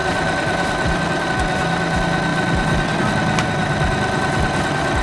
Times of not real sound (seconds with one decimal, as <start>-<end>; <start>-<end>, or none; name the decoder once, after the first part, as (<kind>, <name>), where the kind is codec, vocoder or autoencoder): 0.0-1.3 (vocoder, BigVGAN v2); 2.3-3.0